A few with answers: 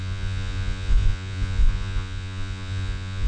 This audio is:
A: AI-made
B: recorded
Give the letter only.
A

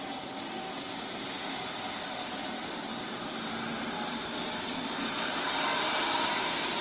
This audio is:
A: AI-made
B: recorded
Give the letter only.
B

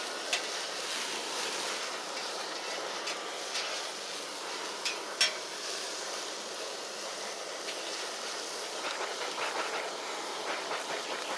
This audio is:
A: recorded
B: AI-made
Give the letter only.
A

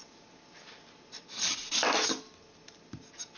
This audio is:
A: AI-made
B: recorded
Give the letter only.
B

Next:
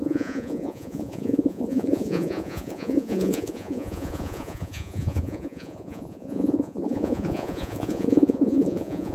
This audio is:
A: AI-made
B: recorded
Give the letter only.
A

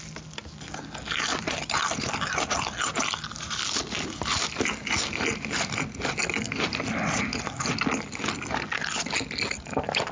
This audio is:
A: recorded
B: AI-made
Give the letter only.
A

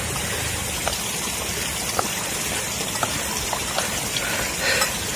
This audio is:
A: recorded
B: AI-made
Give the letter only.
A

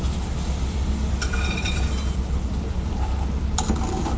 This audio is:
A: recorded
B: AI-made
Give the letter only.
A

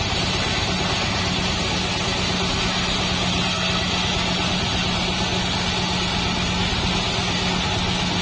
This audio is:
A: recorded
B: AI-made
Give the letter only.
A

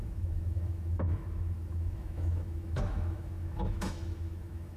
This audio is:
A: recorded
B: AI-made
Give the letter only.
B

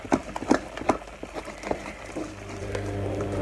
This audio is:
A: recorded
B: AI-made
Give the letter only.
A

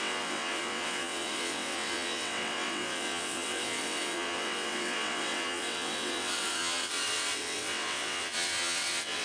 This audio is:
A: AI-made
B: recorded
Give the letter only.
A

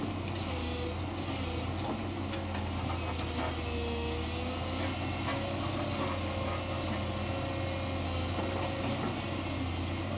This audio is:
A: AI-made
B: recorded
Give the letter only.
B